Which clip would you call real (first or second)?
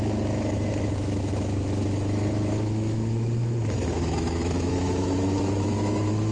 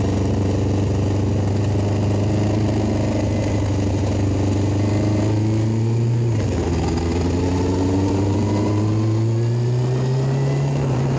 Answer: second